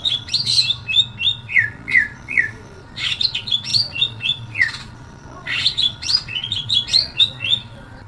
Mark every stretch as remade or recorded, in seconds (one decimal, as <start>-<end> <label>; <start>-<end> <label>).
0.0-0.5 remade; 0.5-1.3 recorded; 1.3-8.1 remade